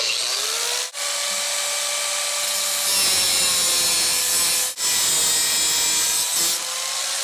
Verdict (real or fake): real